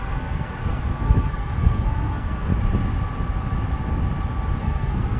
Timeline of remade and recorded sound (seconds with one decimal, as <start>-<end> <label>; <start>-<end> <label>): 0.0-2.5 remade; 2.5-4.6 recorded; 4.6-5.2 remade